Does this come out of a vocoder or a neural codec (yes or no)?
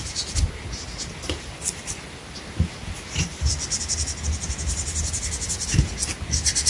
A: no